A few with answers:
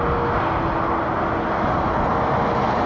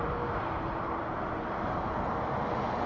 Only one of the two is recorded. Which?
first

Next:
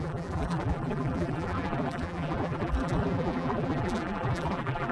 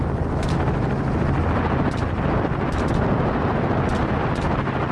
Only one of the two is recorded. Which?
second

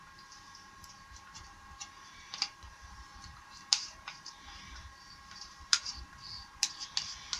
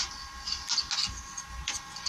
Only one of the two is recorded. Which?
second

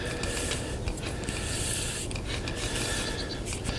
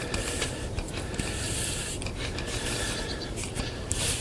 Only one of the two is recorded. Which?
first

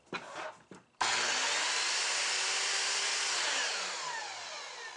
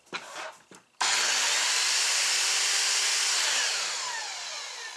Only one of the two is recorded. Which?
first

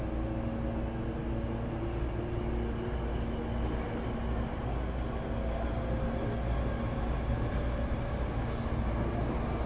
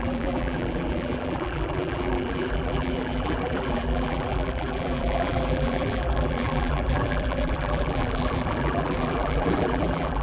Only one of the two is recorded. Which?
first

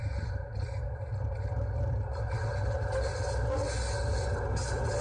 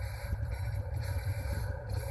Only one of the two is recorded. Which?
first